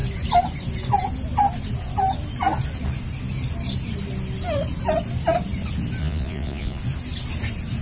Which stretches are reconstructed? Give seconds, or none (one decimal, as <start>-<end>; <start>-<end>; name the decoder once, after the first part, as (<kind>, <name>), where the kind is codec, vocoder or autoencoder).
6.0-6.8 (vocoder, Vocos)